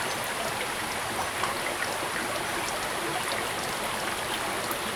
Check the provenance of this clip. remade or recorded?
recorded